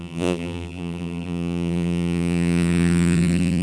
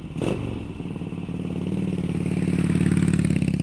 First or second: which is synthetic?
first